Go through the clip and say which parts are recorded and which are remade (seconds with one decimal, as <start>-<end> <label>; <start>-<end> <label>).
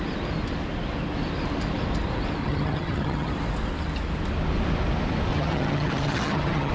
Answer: 0.0-2.4 recorded; 2.4-3.3 remade; 3.3-5.3 recorded; 5.3-6.7 remade